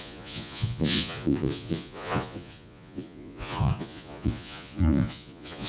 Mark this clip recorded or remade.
remade